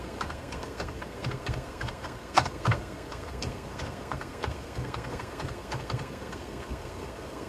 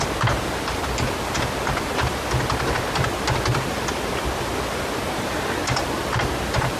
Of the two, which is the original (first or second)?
second